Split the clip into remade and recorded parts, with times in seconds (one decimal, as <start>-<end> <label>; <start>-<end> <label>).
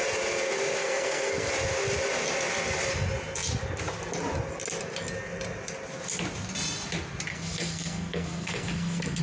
0.0-0.8 recorded; 0.8-1.5 remade; 1.5-7.3 recorded; 7.3-9.2 remade